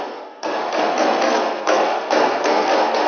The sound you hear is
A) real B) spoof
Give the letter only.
B